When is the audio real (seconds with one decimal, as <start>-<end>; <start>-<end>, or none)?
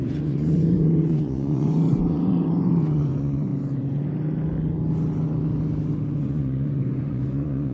3.5-6.2